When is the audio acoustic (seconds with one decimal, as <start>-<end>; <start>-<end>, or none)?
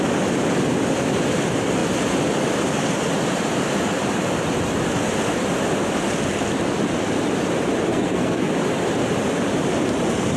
0.0-7.9; 8.5-10.4